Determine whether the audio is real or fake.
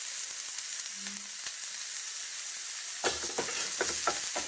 real